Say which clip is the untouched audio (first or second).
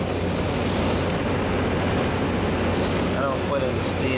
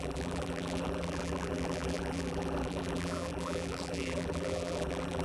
first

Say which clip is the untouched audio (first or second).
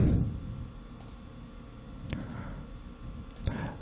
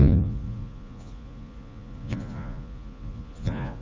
first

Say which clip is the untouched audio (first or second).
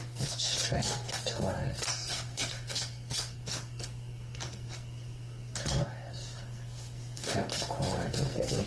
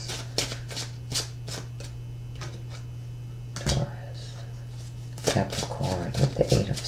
second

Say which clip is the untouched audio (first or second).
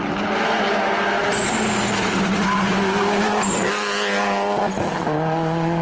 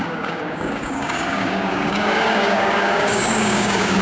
first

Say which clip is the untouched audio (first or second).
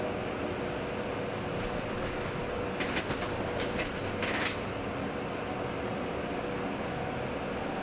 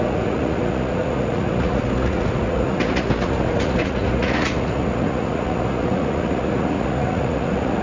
first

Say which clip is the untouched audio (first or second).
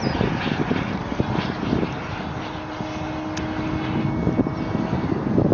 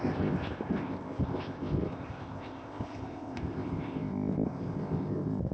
first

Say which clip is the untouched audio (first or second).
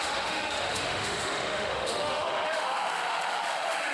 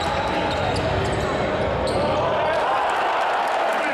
second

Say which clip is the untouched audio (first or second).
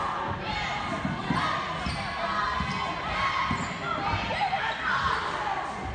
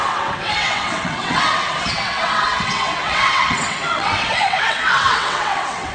first